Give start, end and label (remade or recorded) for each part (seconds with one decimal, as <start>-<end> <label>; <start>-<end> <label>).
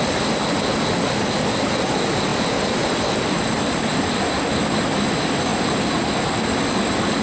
0.0-2.3 recorded; 2.3-4.3 remade; 4.3-5.5 recorded; 5.5-6.2 remade; 6.2-7.2 recorded